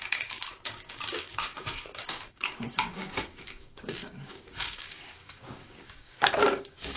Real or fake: fake